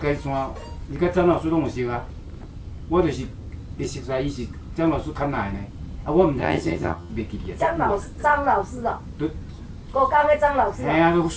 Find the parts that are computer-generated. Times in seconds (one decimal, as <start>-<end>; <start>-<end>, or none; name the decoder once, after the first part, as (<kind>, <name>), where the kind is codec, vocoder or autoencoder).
6.4-7.1 (vocoder, HiFi-GAN)